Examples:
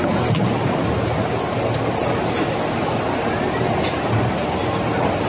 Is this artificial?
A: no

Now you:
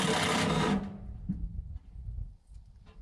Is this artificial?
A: no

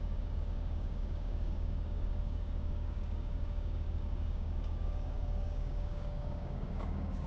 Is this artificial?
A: yes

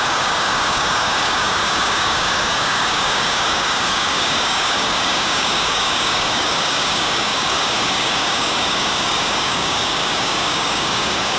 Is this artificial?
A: yes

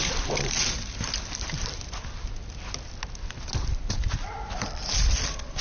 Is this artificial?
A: no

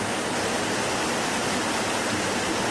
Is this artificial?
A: no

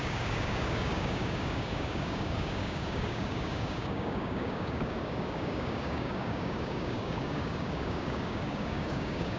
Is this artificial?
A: yes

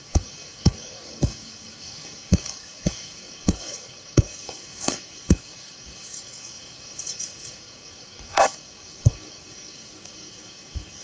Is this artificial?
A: yes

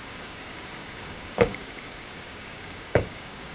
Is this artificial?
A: yes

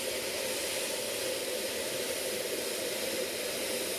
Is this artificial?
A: no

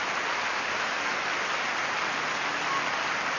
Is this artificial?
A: no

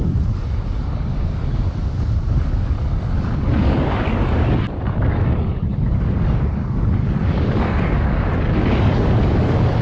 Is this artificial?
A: yes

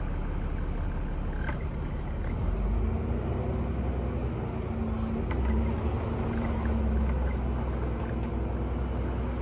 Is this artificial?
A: no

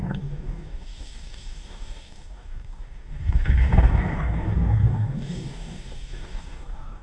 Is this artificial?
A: yes